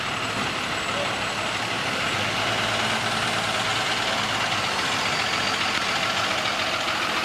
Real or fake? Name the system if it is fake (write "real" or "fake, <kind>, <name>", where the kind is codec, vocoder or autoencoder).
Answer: real